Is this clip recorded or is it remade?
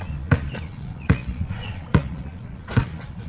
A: remade